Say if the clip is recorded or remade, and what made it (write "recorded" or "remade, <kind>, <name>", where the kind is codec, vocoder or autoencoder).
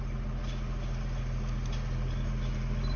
recorded